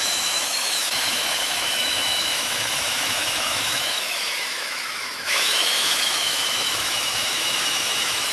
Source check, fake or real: fake